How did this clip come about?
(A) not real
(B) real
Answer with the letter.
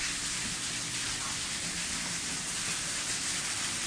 A